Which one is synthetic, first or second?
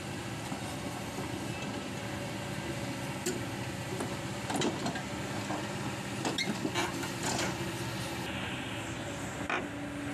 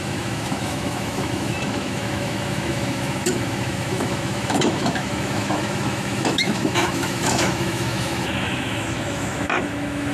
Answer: second